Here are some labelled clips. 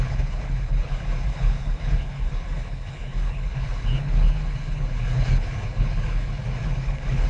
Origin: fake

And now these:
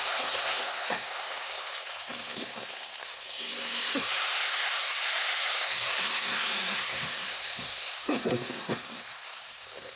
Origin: fake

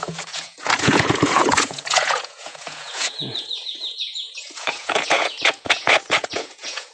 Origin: fake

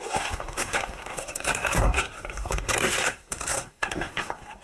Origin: fake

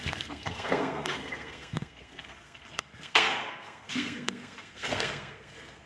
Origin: fake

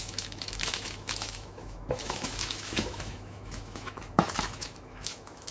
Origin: fake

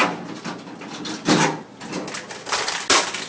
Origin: real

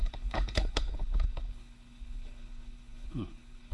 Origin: fake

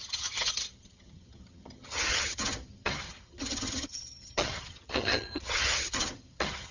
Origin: fake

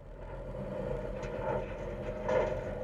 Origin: real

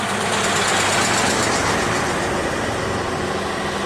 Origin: real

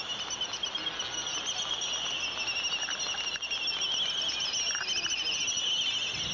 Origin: real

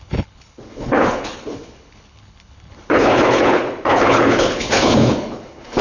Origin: fake